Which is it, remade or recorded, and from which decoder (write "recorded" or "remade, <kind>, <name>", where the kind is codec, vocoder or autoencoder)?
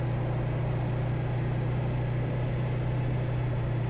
recorded